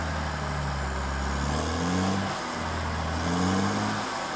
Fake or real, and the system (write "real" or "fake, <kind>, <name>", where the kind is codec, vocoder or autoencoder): real